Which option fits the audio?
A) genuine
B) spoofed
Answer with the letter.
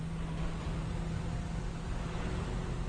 A